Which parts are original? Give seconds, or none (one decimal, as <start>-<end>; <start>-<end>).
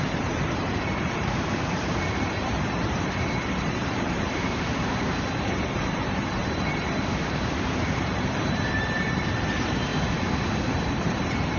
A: 9.9-10.6